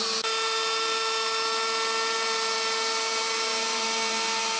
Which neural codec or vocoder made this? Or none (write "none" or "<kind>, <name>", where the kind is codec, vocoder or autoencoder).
none